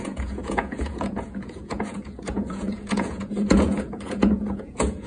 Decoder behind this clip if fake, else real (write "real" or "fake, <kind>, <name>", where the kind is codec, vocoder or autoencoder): fake, vocoder, Vocos